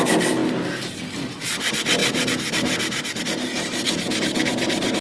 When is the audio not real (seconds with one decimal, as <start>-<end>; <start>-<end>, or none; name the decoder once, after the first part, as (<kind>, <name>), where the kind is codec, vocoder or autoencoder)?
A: none